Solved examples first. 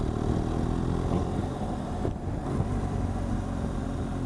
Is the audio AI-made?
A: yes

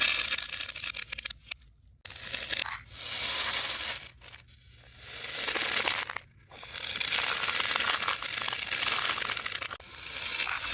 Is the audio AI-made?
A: no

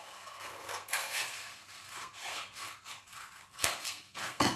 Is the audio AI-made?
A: yes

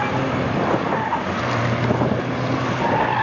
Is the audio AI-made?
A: no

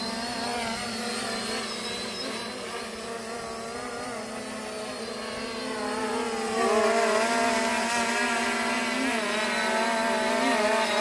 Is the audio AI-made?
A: no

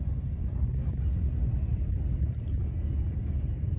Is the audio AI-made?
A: no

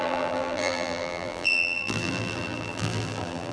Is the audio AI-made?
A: yes